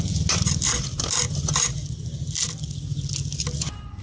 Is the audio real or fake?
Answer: real